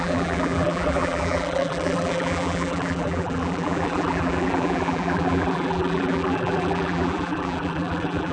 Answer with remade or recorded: remade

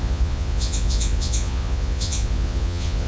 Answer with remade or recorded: remade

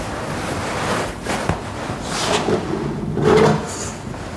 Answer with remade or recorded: recorded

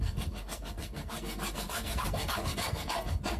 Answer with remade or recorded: remade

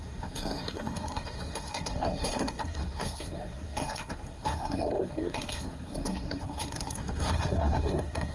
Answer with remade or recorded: remade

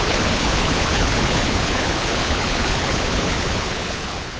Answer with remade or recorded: remade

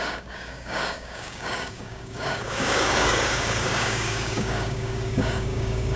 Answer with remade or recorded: remade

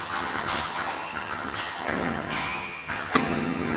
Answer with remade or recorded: remade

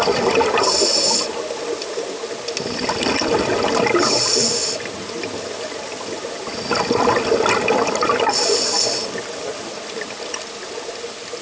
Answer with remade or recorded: recorded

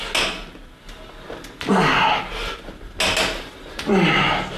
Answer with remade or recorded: recorded